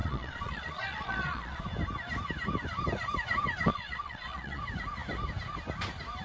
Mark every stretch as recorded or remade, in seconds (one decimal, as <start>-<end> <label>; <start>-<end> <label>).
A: 0.0-1.6 remade; 1.6-3.7 recorded; 3.7-4.6 remade; 4.6-6.2 recorded